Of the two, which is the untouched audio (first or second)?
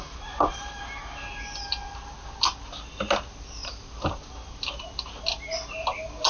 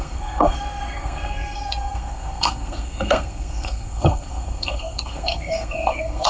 first